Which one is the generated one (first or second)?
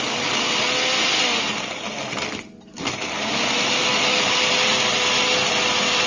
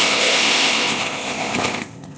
second